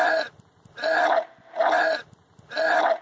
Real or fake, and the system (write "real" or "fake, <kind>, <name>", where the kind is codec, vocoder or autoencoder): real